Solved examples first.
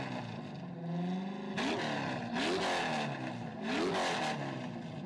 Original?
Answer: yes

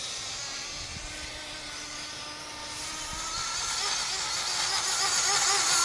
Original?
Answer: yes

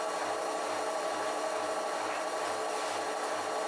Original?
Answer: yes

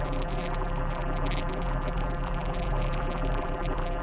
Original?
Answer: no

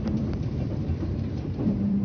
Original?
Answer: no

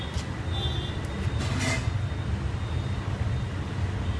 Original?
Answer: yes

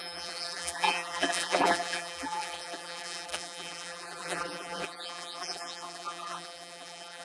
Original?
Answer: no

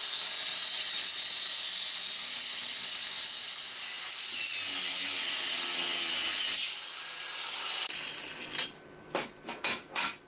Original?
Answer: yes